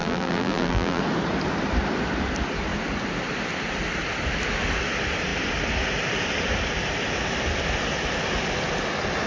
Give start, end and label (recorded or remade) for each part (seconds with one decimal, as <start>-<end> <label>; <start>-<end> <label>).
0.0-1.0 remade; 1.0-9.3 recorded